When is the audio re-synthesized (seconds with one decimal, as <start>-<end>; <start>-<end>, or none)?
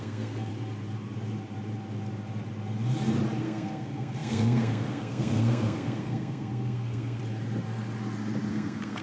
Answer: 0.0-0.5; 3.4-7.2; 8.5-9.0